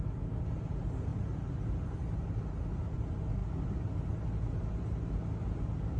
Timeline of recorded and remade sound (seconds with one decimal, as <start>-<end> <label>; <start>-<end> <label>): 0.0-6.0 recorded